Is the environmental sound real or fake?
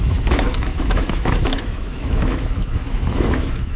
fake